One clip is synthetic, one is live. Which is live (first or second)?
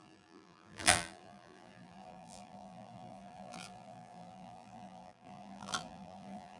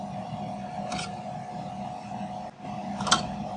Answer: second